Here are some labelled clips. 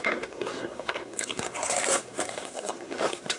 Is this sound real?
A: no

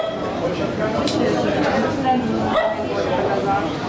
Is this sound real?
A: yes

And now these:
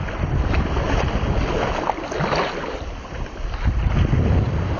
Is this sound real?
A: yes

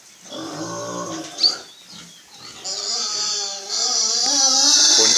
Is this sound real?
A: yes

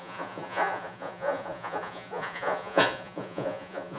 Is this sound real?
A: no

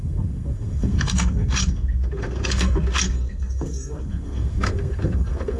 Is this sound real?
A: no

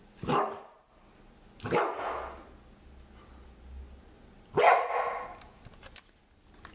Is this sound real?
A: yes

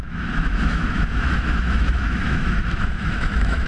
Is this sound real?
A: no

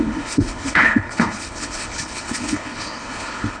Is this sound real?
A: no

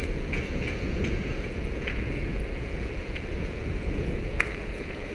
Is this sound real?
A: no